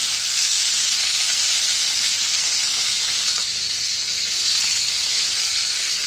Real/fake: fake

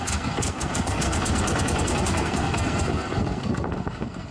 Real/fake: fake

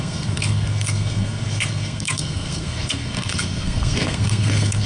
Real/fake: fake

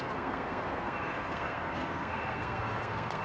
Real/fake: fake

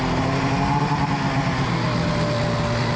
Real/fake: real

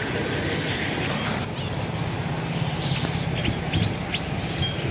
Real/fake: real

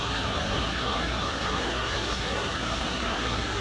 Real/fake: fake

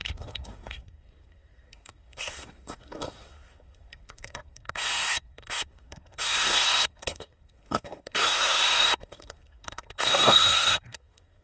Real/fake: fake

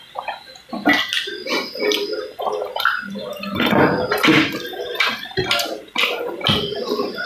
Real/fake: real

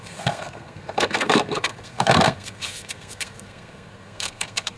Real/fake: fake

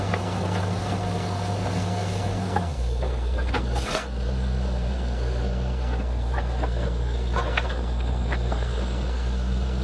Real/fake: fake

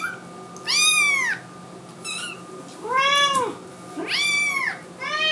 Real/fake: real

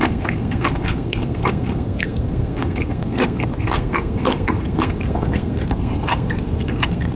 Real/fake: fake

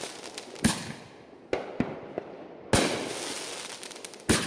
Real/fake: real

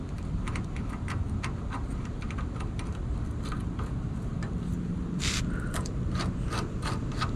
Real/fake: real